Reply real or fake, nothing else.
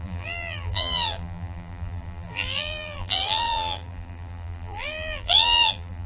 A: fake